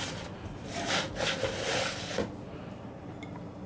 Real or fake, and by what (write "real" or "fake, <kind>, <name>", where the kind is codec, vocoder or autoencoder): real